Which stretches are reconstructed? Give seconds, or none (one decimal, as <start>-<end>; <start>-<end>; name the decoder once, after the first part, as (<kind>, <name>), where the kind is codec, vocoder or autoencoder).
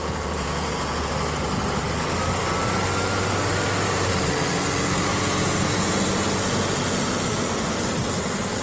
0.0-1.1 (vocoder, Vocos); 5.1-6.0